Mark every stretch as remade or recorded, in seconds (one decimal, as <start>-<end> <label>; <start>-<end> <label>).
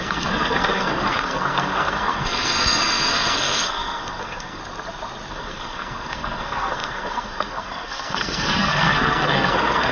0.0-4.6 remade; 4.6-5.3 recorded; 5.3-9.9 remade